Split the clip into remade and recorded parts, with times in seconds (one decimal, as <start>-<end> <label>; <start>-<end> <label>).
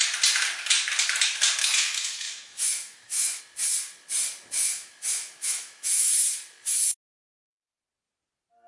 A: 0.0-1.6 recorded; 1.6-3.4 remade; 3.4-4.6 recorded; 4.6-6.1 remade; 6.1-8.7 recorded